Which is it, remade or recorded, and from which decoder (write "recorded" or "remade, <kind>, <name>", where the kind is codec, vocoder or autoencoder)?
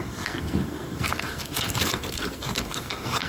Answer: remade, codec, SNAC